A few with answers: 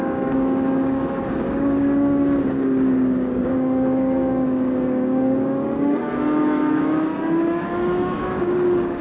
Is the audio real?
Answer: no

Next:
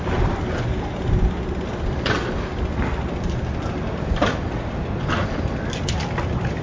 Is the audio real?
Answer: yes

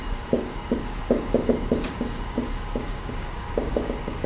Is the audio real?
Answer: no